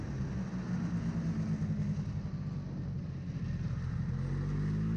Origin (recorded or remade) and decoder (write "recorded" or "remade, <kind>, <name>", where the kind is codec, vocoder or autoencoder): recorded